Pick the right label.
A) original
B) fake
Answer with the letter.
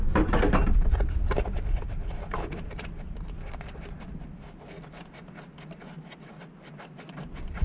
A